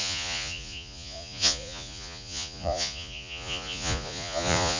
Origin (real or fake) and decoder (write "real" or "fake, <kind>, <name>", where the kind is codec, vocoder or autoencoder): fake, vocoder, Vocos